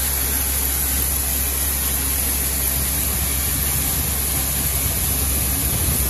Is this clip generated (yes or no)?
no